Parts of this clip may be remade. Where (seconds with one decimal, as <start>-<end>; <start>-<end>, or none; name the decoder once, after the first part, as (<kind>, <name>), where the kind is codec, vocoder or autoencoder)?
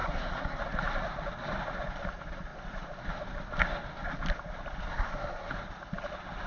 0.0-0.6 (codec, SNAC); 4.9-5.5